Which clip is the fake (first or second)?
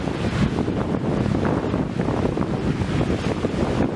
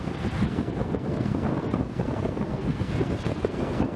second